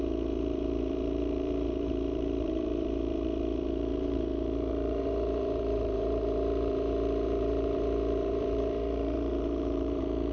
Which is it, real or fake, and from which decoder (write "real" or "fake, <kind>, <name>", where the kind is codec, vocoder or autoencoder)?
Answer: fake, vocoder, BigVGAN v2